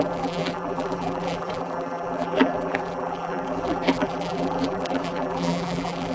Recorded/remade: remade